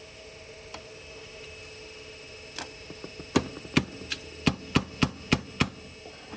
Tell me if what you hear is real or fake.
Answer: real